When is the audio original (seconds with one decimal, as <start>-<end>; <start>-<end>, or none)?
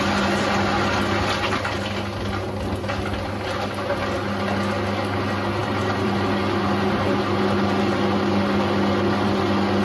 0.0-5.6; 6.1-9.8